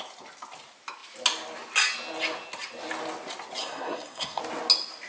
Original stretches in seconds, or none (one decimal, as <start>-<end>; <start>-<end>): 0.0-3.6; 4.4-5.1